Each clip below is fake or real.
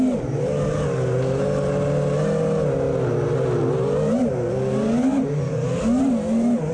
real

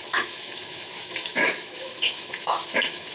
fake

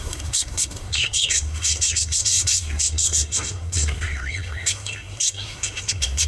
fake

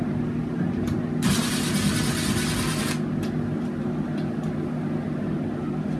real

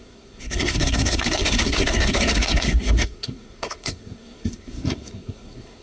fake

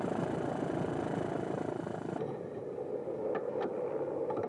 real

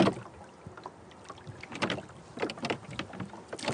real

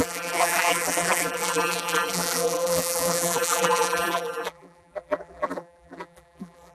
fake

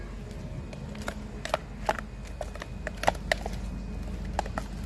real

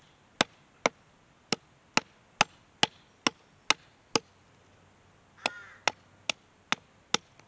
real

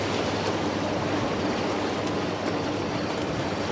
real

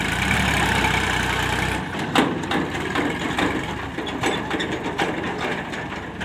real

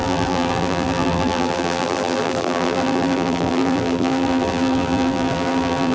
fake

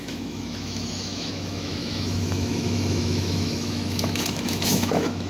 fake